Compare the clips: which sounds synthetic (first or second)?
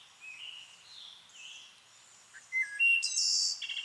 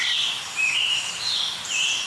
second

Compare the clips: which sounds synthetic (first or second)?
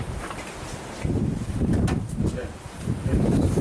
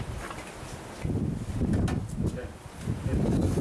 first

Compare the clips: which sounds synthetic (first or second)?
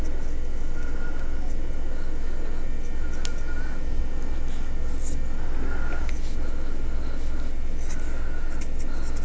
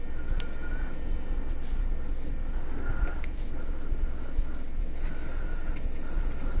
second